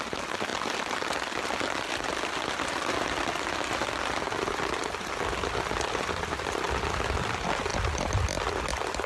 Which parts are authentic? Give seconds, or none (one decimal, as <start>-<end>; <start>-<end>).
0.0-9.1